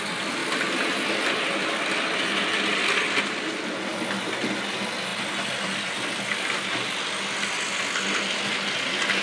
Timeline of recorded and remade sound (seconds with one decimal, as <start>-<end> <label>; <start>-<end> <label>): 0.0-9.2 recorded

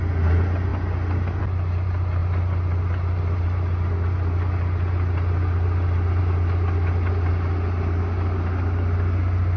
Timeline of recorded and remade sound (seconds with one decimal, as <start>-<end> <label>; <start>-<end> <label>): 0.0-9.6 recorded

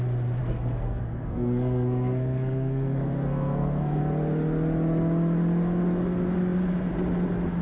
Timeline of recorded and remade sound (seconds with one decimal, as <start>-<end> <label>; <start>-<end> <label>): 0.0-0.4 recorded; 0.4-4.0 remade; 4.0-7.6 recorded

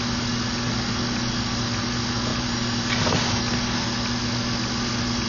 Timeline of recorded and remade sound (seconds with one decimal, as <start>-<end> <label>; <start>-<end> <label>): 0.0-2.3 recorded; 2.3-2.9 remade; 2.9-5.3 recorded

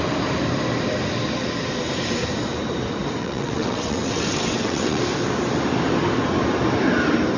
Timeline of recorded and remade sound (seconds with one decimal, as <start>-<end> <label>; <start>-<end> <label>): 0.0-3.2 recorded; 3.2-5.0 remade; 5.0-7.4 recorded

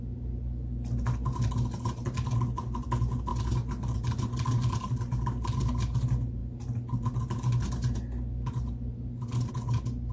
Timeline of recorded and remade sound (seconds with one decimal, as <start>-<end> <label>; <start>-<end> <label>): 0.0-10.1 recorded

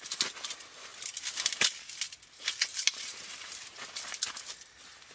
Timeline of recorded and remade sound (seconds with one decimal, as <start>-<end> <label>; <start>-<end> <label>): 0.0-2.7 recorded; 2.7-3.8 remade; 3.8-5.1 recorded